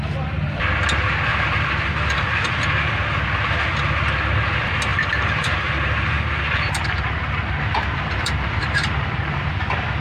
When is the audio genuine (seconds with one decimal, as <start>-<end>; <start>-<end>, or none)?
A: 0.0-1.3; 2.9-4.9; 9.5-10.0